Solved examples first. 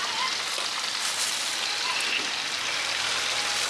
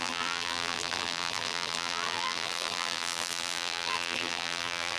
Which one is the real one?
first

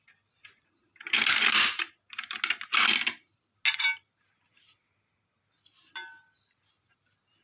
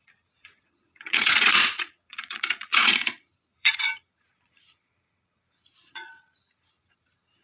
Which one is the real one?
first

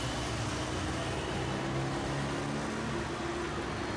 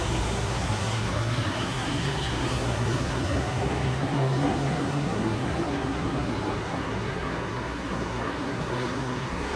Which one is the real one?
first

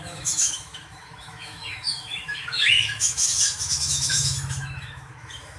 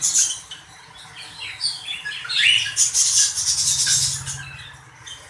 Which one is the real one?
second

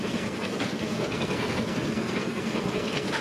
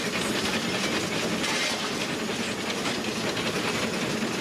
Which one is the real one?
second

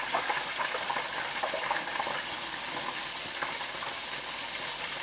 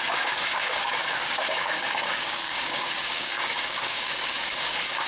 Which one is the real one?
first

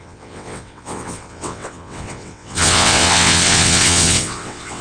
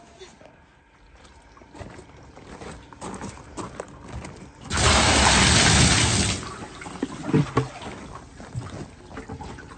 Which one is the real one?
second